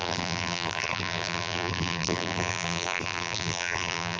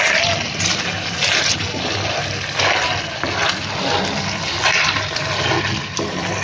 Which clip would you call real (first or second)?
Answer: second